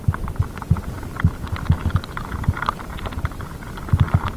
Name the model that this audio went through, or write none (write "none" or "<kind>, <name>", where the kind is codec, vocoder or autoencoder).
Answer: none